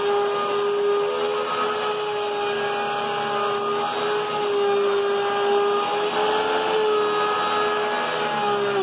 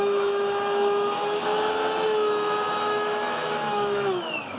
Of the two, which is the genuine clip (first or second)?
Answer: first